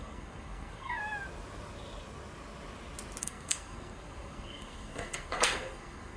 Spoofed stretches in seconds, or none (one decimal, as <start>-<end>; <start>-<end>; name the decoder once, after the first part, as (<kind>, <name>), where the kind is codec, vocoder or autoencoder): 0.0-1.0 (codec, SNAC); 3.2-6.2